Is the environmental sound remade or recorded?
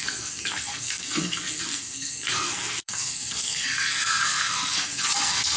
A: remade